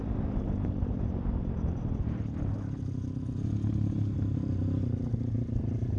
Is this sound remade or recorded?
recorded